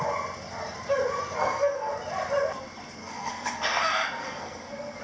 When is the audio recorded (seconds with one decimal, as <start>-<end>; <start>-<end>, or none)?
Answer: 0.0-1.4; 1.9-3.0; 3.8-4.2